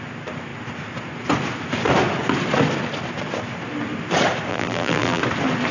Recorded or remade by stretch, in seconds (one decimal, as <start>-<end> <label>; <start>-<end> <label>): 0.0-4.5 recorded; 4.5-5.2 remade; 5.2-5.7 recorded